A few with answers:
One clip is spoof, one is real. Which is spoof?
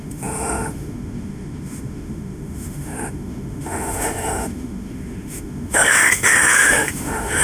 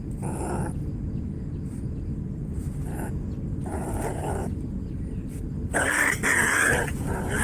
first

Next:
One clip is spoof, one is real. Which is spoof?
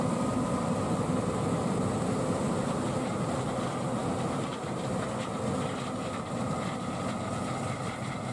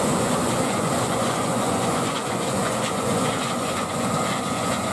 second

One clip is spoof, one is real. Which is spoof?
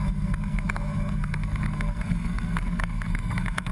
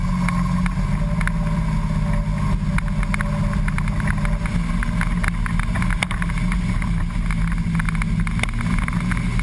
first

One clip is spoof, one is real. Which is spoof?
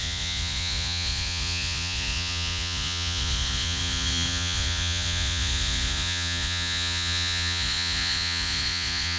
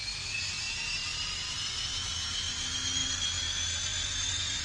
first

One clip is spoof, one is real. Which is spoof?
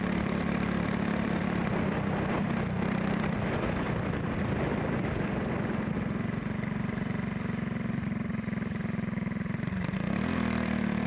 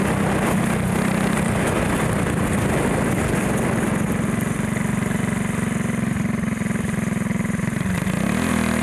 first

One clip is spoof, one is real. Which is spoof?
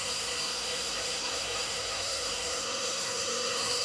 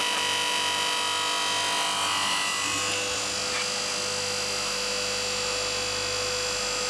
first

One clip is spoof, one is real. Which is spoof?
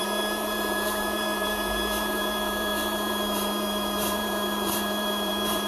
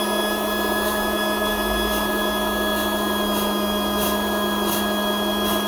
first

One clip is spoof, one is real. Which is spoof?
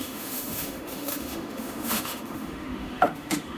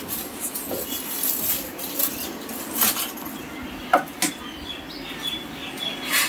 first